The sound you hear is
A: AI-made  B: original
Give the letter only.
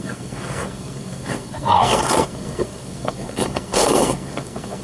A